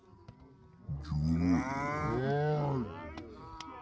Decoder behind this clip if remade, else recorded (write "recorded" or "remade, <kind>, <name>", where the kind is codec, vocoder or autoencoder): recorded